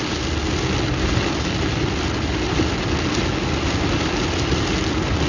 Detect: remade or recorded recorded